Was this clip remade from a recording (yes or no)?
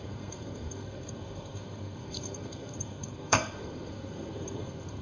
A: yes